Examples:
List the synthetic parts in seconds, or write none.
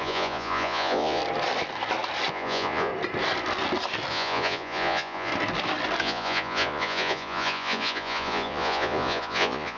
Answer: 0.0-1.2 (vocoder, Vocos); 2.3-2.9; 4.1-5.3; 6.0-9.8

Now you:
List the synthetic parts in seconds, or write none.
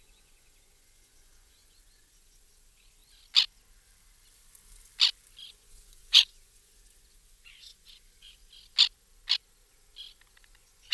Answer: 0.0-3.0 (vocoder, Vocos); 5.5-8.4; 10.4-10.9